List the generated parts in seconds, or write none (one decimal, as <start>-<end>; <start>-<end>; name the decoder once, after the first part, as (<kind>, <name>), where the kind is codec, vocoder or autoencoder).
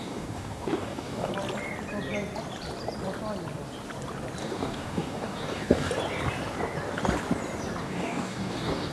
0.0-1.3 (codec, DAC); 4.4-5.9; 7.8-8.9